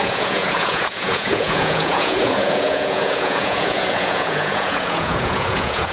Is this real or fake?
fake